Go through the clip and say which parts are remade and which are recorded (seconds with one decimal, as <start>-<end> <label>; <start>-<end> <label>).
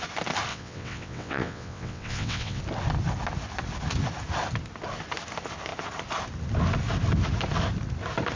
0.0-0.5 recorded; 0.5-2.6 remade; 2.6-8.4 recorded